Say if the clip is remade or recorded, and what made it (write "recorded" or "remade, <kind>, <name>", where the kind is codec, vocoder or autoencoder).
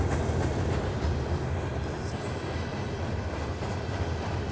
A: recorded